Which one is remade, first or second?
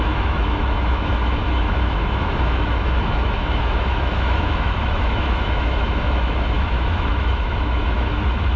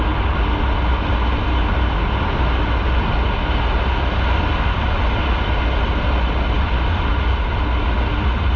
first